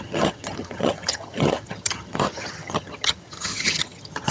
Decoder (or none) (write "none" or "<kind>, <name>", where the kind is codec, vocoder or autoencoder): vocoder, HiFi-GAN